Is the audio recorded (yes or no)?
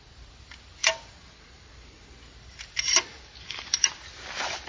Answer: yes